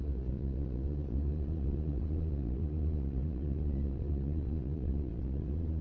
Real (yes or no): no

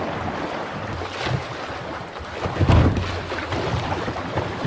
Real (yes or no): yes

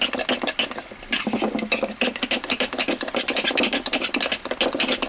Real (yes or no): yes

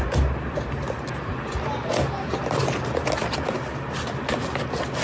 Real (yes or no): yes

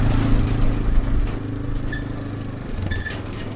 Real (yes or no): yes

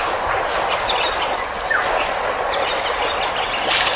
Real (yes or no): yes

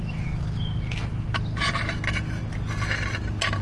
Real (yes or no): yes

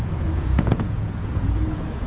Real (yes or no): no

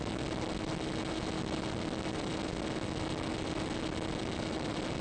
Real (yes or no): yes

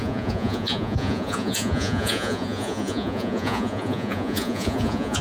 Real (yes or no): no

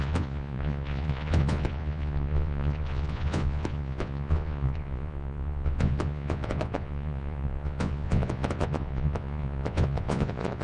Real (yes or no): no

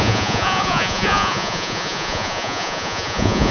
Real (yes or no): no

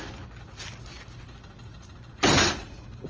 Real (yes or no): yes